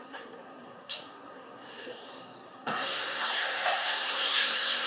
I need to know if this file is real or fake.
fake